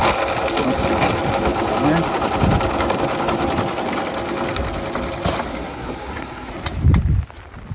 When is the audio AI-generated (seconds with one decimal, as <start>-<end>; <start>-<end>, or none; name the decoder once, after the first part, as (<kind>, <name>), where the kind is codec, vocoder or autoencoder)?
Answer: 5.5-6.5 (codec, SNAC)